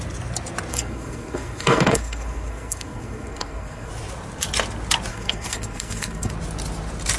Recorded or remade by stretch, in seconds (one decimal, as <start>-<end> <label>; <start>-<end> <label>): 0.0-0.7 recorded; 0.7-3.9 remade; 3.9-5.1 recorded; 5.1-6.3 remade; 6.3-7.2 recorded